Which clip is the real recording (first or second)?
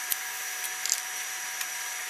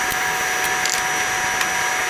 second